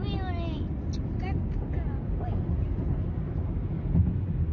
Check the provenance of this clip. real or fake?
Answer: real